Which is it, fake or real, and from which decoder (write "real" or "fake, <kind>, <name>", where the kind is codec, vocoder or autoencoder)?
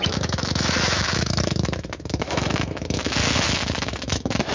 fake, autoencoder, DAC-VAE